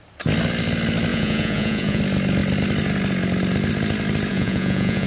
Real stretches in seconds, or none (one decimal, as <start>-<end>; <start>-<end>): 0.0-1.1; 2.0-4.3